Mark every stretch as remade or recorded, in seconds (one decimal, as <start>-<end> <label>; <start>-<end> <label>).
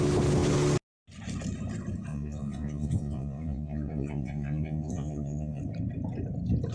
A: 0.0-2.1 recorded; 2.1-5.6 remade; 5.6-6.7 recorded